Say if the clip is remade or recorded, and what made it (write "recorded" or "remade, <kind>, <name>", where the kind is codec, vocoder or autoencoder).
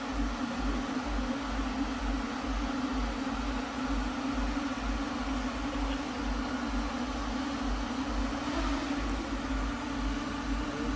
recorded